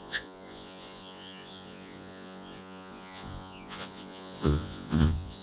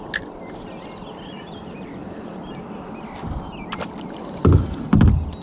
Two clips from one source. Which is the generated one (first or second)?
first